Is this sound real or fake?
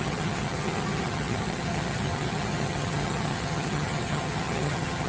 fake